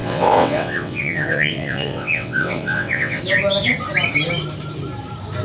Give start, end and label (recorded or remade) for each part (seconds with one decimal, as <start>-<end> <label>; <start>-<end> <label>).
0.0-3.2 remade; 3.2-5.4 recorded